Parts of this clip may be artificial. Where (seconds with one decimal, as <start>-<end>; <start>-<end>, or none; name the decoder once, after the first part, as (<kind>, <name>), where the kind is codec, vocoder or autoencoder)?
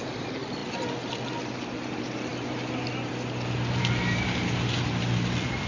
none